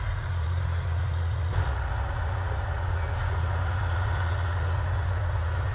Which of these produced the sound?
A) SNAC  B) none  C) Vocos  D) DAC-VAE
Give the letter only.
C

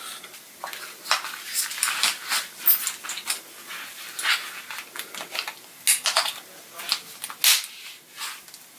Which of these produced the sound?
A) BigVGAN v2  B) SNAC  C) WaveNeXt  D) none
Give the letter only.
D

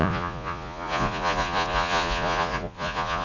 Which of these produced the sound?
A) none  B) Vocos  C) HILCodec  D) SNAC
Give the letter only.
B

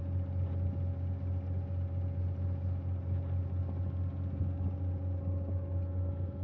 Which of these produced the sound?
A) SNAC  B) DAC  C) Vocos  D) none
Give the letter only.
D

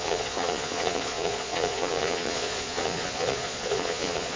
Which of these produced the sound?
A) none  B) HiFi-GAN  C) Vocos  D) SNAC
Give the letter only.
C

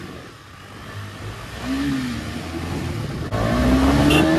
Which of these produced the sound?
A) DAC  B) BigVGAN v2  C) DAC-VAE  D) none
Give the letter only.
D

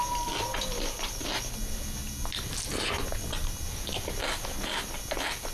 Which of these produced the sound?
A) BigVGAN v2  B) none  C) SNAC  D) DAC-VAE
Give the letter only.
B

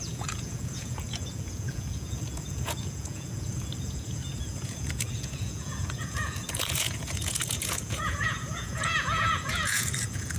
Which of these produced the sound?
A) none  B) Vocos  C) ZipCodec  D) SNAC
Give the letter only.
B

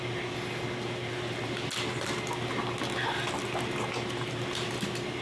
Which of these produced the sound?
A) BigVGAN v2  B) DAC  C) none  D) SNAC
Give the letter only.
C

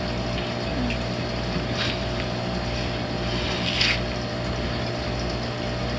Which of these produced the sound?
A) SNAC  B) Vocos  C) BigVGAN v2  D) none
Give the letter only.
D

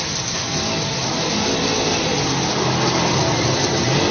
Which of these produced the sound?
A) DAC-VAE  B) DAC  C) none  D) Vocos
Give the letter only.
C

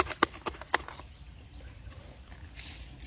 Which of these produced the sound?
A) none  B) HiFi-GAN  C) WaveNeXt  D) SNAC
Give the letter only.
A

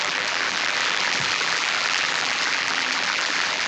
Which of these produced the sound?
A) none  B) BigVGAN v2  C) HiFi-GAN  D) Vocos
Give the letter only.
B